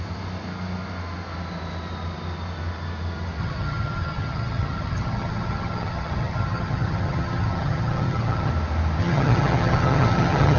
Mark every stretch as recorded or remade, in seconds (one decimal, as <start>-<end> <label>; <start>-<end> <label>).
0.0-3.4 recorded; 3.4-8.5 remade; 8.5-9.0 recorded; 9.0-10.6 remade